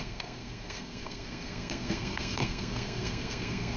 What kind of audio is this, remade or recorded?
remade